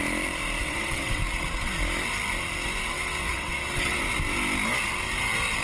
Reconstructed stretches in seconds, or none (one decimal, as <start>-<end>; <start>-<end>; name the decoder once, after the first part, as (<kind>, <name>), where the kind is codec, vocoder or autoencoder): 0.6-1.2 (vocoder, WaveNeXt); 2.9-4.0